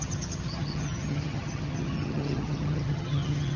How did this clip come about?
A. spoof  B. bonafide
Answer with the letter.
A